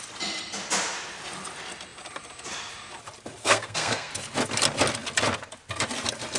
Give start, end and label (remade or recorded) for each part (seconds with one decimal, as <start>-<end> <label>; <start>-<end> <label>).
0.0-3.4 recorded; 3.4-4.1 remade; 4.1-6.4 recorded